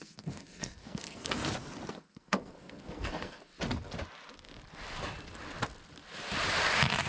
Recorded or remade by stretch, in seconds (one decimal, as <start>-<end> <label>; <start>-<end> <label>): 0.0-1.4 remade; 1.4-1.9 recorded; 1.9-3.5 remade; 3.5-7.1 recorded